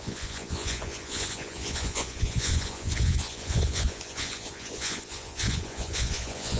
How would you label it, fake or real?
fake